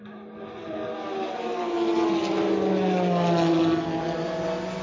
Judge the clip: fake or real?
real